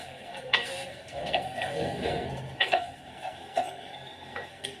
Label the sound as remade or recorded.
remade